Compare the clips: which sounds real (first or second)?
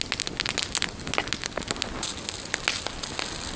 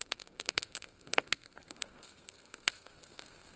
first